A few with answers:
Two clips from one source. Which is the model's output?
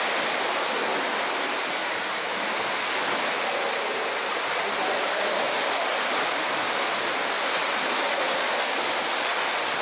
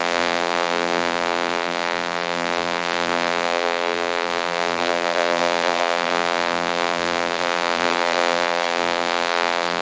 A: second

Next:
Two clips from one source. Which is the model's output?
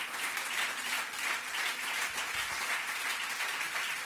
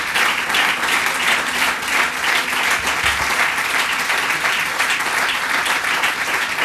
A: first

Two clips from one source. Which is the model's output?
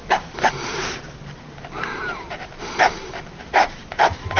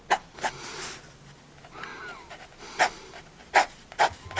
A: first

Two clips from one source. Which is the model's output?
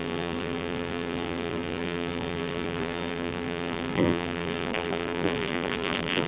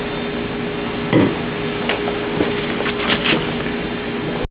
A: first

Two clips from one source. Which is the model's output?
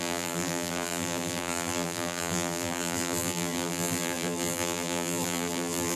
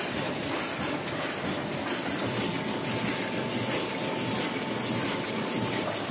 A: first